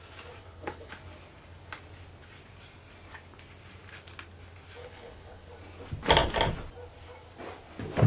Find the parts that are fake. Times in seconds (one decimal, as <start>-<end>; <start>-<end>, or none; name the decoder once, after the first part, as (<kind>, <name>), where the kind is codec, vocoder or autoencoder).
0.4-0.9 (codec, HILCodec); 4.8-5.5